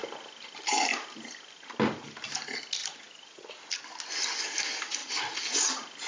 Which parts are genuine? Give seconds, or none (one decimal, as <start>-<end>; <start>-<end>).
0.0-2.8; 3.5-6.1